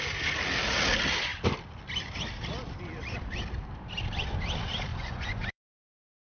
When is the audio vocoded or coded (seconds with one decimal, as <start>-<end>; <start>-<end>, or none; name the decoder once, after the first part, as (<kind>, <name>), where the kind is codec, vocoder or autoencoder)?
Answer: 4.9-5.6 (vocoder, Vocos)